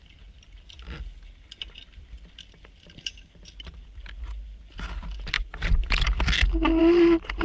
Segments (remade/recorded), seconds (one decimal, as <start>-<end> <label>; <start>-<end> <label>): 0.0-7.4 recorded

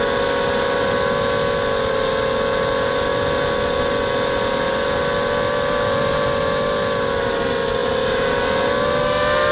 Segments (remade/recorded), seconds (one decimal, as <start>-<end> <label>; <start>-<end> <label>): 0.0-7.8 recorded; 7.8-8.4 remade; 8.4-9.5 recorded

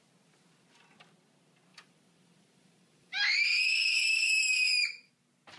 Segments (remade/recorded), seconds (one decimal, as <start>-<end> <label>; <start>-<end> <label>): 0.0-1.7 recorded; 1.7-5.1 remade; 5.1-5.6 recorded

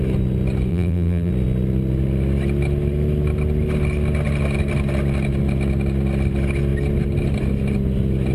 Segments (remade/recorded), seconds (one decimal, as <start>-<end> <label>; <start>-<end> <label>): 0.0-0.7 recorded; 0.7-1.3 remade; 1.3-8.3 recorded

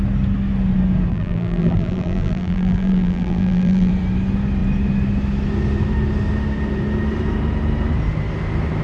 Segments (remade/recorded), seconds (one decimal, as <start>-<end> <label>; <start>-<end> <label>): 0.0-1.1 recorded; 1.1-3.9 remade; 3.9-8.8 recorded

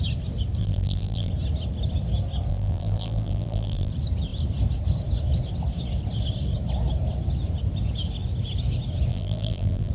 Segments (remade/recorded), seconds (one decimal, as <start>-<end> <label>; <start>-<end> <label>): 0.0-0.6 recorded; 0.6-1.3 remade; 1.3-2.5 recorded; 2.5-3.9 remade; 3.9-9.1 recorded; 9.1-9.9 remade

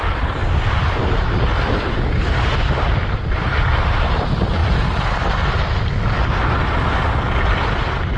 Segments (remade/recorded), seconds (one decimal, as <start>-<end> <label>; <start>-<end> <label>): 0.0-0.4 remade; 0.4-2.4 recorded; 2.4-4.6 remade; 4.6-8.2 recorded